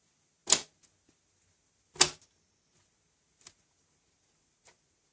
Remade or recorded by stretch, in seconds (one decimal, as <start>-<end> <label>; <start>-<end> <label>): 0.0-5.1 recorded